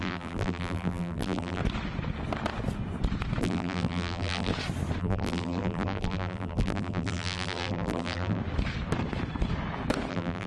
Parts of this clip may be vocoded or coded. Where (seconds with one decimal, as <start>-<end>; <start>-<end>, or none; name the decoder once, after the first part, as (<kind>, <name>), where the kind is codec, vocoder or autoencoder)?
0.0-1.6 (vocoder, BigVGAN v2); 3.4-4.5; 5.0-8.4; 10.1-10.5